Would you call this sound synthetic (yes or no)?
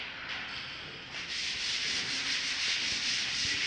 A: no